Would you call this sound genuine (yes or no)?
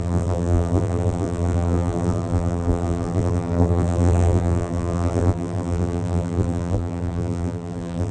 no